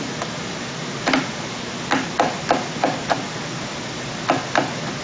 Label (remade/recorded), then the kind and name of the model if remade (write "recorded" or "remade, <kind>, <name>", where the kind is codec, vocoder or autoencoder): recorded